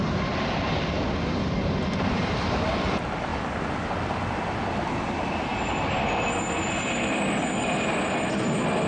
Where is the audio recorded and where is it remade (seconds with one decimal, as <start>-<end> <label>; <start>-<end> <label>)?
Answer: 0.0-8.9 recorded

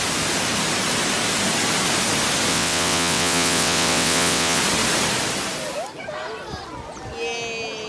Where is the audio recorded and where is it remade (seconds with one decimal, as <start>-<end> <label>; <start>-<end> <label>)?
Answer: 0.0-2.5 recorded; 2.5-4.6 remade; 4.6-7.9 recorded

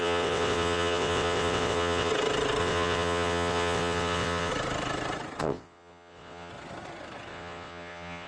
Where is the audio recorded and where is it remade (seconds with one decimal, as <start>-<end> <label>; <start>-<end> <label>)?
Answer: 0.0-2.1 remade; 2.1-2.6 recorded; 2.6-4.5 remade; 4.5-5.4 recorded; 5.4-6.5 remade; 6.5-7.3 recorded; 7.3-8.3 remade

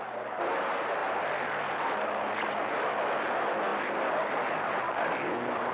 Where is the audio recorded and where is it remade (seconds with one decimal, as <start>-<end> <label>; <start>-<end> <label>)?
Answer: 0.0-5.7 recorded

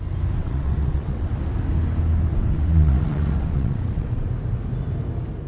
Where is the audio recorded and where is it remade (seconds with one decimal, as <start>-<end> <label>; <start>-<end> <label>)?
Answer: 0.0-0.4 recorded; 0.4-1.3 remade; 1.3-2.3 recorded; 2.3-4.3 remade; 4.3-5.5 recorded